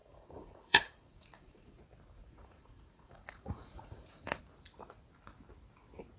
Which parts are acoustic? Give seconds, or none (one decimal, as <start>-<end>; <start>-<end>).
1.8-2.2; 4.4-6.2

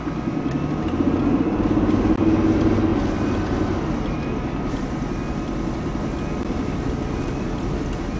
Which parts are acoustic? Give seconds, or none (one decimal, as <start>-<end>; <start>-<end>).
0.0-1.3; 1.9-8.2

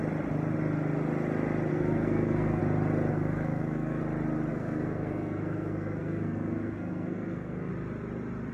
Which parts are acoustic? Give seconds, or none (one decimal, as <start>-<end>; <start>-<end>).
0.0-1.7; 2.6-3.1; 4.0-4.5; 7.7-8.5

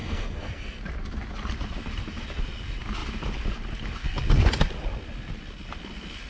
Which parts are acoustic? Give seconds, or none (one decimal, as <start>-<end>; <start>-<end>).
0.8-6.3

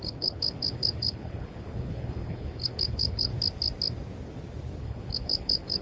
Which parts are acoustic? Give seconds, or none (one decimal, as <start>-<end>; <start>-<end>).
3.3-4.8

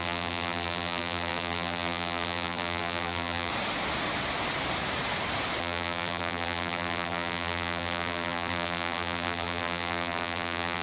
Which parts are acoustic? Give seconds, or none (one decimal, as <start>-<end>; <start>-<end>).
3.5-5.6